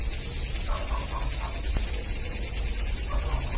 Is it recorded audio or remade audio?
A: recorded